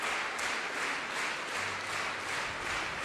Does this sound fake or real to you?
real